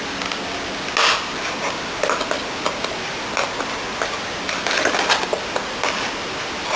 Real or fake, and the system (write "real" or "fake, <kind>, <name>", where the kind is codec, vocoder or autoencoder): real